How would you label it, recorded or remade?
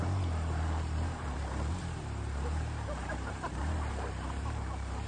remade